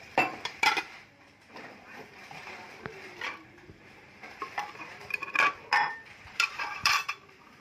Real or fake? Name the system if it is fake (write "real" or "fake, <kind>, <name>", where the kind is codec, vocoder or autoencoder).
fake, vocoder, BigVGAN v2